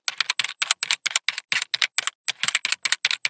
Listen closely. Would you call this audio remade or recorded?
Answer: recorded